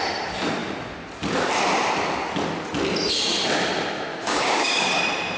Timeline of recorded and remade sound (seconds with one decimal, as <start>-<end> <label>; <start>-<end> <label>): 0.0-4.1 recorded; 4.1-5.0 remade; 5.0-5.4 recorded